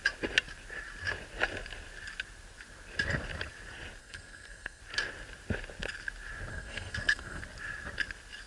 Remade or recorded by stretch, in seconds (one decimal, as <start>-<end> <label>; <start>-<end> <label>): 0.0-4.0 recorded; 4.0-4.8 remade; 4.8-6.5 recorded; 6.5-7.4 remade; 7.4-8.5 recorded

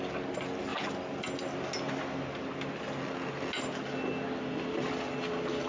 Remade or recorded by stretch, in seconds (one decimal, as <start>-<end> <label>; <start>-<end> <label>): 0.0-5.7 recorded

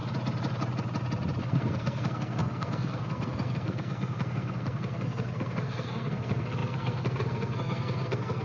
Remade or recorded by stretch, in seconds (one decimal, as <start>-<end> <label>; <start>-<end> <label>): 0.0-1.4 recorded; 1.4-8.4 remade

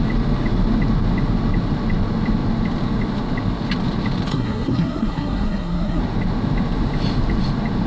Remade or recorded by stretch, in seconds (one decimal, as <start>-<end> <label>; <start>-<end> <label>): 0.0-4.3 recorded; 4.3-6.0 remade; 6.0-7.9 recorded

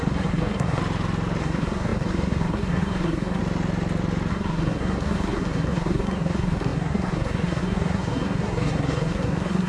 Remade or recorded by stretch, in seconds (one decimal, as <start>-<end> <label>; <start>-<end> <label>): 0.0-0.8 remade; 0.8-1.4 recorded; 1.4-3.4 remade; 3.4-4.3 recorded; 4.3-9.7 remade

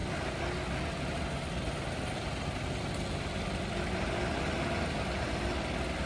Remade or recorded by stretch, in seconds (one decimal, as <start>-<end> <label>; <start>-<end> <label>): 0.0-6.1 recorded